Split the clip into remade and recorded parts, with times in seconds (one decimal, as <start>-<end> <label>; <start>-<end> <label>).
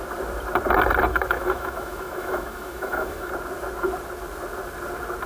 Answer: 0.0-1.1 recorded; 1.1-3.3 remade; 3.3-5.3 recorded